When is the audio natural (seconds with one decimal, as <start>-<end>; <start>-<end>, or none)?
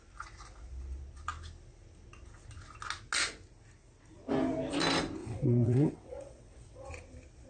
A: 0.0-5.2; 6.9-7.5